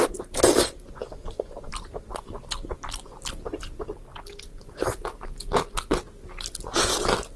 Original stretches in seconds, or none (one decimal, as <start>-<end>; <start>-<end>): 0.0-1.0; 1.7-7.4